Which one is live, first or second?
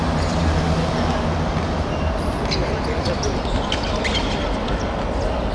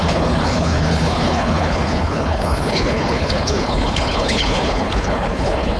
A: first